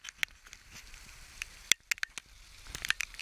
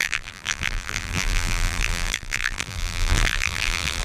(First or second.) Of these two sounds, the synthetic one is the second